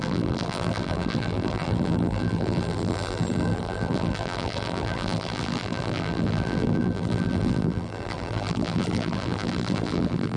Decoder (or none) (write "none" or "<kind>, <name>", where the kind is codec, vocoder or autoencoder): vocoder, BigVGAN v2